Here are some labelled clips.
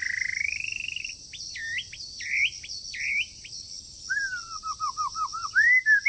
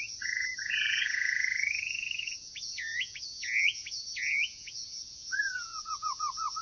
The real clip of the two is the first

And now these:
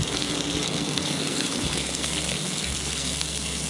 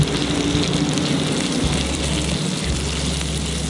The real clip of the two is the second